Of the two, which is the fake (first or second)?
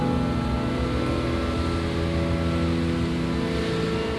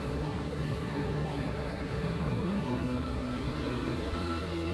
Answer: second